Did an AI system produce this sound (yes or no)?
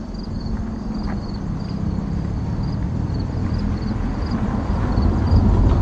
yes